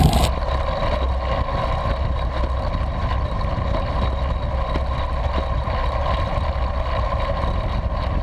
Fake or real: real